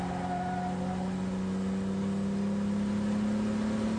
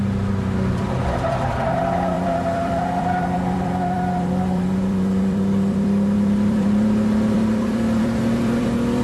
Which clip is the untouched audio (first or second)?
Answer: first